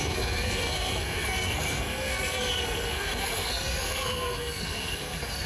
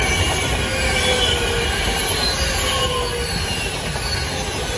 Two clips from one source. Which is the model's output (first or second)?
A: first